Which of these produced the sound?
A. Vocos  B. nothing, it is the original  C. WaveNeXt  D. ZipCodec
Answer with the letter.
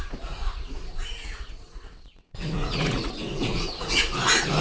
A